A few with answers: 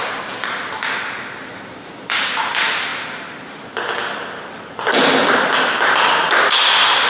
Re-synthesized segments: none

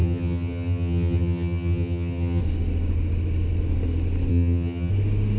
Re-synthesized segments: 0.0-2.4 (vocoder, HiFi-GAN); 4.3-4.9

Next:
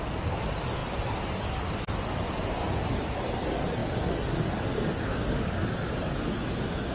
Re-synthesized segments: none